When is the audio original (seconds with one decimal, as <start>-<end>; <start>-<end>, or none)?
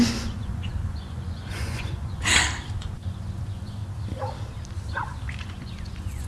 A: 2.3-2.8; 3.8-5.4